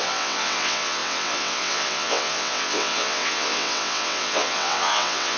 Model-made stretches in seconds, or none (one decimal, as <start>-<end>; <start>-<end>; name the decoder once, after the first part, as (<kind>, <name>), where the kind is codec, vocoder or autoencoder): 0.0-5.4 (vocoder, WaveNeXt)